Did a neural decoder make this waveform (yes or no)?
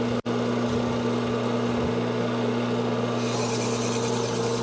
no